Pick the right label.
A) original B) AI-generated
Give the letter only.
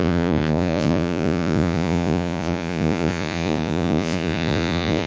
B